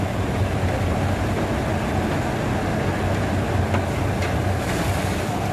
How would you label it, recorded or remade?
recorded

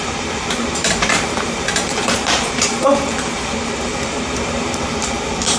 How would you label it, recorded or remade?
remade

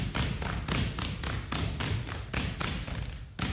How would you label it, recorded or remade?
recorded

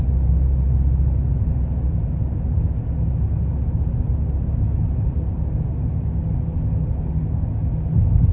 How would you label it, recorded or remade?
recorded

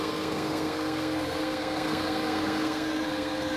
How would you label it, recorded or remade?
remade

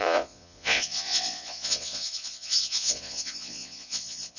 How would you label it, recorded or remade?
remade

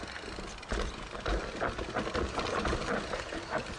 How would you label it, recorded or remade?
recorded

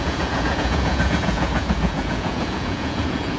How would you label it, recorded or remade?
remade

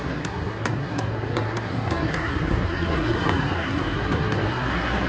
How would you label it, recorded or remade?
remade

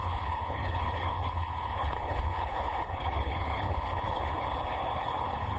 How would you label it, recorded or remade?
remade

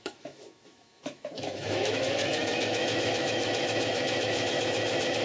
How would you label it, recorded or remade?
remade